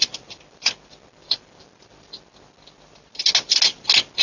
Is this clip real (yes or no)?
yes